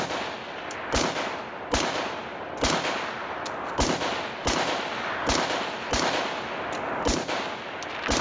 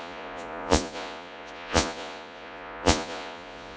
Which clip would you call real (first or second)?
first